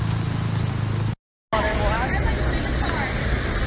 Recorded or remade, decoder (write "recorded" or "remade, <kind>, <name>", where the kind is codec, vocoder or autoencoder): recorded